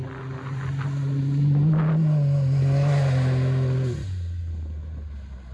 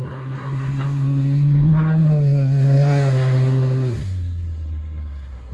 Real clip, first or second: first